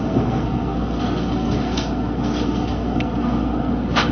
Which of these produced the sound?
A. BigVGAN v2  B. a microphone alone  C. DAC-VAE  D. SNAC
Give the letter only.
D